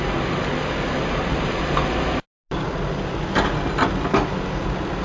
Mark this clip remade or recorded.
recorded